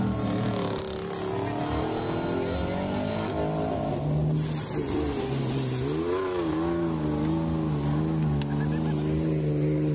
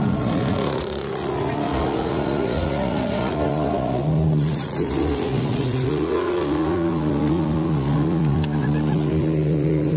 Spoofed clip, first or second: second